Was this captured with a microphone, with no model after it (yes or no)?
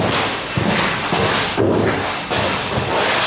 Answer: yes